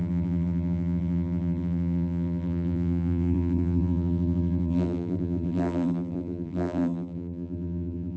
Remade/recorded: remade